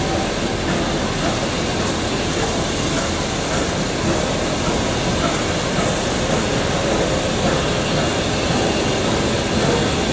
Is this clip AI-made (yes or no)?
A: no